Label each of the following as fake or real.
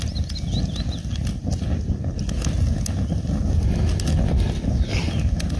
real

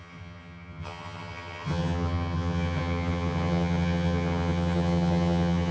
fake